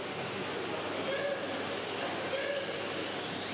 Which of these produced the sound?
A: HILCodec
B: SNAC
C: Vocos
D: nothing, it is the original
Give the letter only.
D